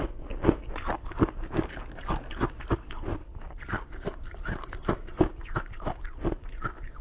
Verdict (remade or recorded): recorded